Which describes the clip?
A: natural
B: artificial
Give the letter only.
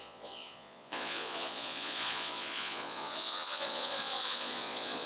B